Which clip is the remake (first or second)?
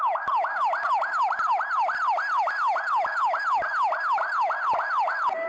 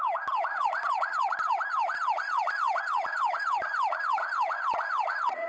second